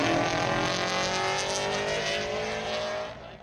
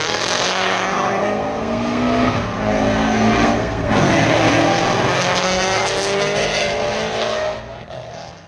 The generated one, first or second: second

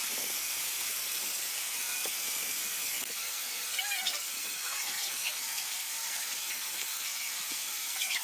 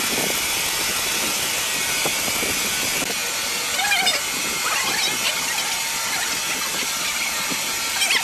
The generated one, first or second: first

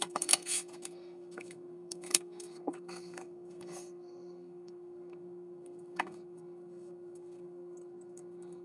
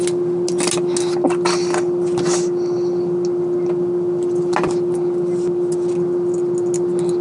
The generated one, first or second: first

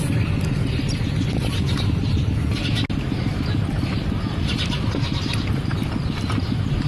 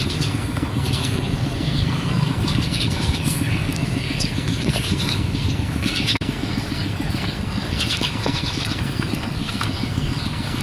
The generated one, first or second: second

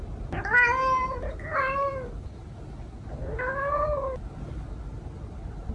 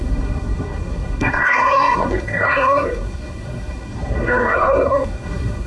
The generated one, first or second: second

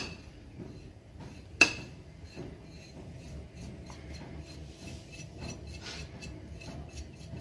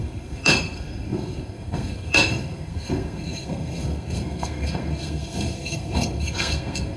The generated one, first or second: second